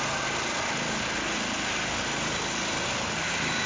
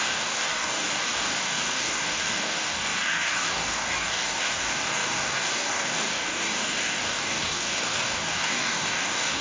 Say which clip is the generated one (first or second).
second